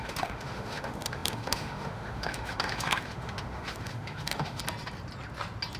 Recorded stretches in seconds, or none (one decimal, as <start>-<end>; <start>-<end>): 4.6-5.8